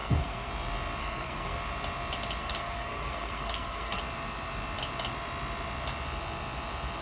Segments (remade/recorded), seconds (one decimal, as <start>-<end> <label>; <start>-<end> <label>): 0.0-0.5 remade; 0.5-1.0 recorded; 1.0-1.6 remade; 1.6-2.4 recorded; 2.4-4.0 remade; 4.0-7.0 recorded